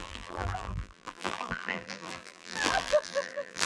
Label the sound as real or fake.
fake